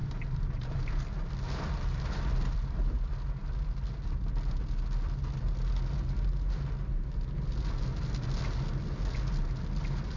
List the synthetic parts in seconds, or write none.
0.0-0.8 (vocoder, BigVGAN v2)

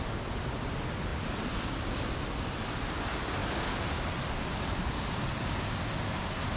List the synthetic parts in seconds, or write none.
1.1-1.8 (vocoder, BigVGAN v2)

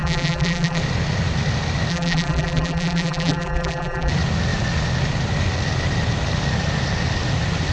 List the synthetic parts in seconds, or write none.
0.0-0.8 (vocoder, BigVGAN v2); 1.9-4.1